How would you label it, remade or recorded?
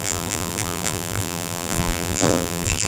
remade